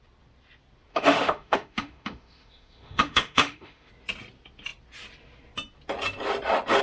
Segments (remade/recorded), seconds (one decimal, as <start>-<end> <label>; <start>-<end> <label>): 0.0-0.9 recorded; 0.9-3.9 remade; 3.9-6.8 recorded